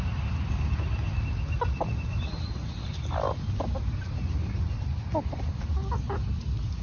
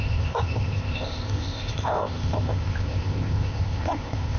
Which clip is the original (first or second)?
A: first